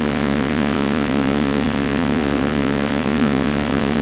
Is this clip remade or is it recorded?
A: remade